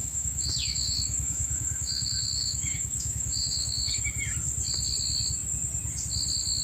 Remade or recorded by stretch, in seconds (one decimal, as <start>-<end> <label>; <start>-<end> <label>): 0.0-4.0 remade; 4.0-6.6 recorded